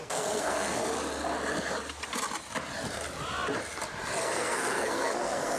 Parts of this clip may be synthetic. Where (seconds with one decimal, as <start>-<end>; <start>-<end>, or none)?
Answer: 0.0-0.8; 4.2-5.6